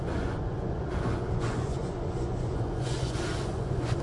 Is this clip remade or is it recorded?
remade